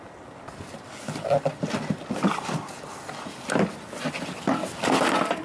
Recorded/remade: recorded